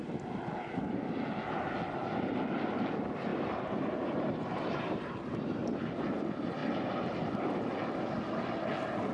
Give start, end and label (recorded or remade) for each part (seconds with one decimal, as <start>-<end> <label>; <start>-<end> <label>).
0.0-3.3 recorded; 3.3-5.1 remade; 5.1-6.6 recorded; 6.6-7.1 remade; 7.1-9.1 recorded